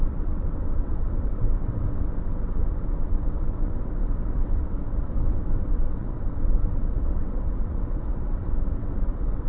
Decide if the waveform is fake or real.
fake